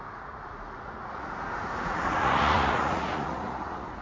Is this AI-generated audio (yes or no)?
yes